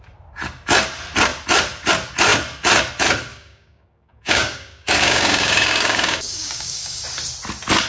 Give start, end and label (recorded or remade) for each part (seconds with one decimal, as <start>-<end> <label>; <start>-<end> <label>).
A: 0.0-3.3 recorded; 3.3-7.0 remade; 7.0-7.9 recorded